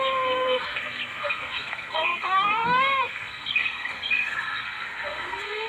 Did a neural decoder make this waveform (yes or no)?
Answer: yes